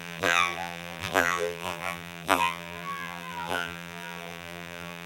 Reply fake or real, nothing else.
fake